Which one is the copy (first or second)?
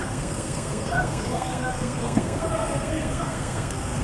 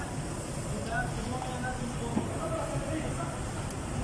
first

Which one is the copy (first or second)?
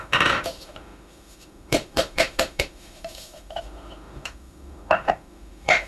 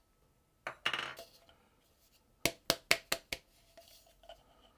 first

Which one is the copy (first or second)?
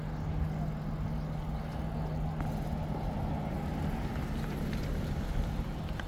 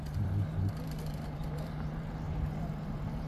second